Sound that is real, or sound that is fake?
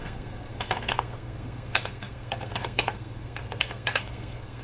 fake